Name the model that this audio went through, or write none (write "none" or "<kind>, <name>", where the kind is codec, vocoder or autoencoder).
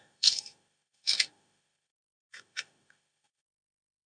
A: autoencoder, DAC-VAE